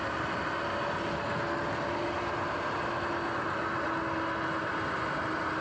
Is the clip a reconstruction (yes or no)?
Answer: no